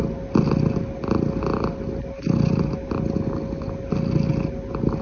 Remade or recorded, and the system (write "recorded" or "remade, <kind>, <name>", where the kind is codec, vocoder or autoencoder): recorded